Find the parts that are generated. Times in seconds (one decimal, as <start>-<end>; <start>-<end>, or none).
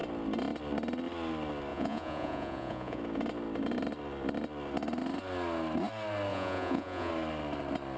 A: 1.7-3.0; 6.3-7.1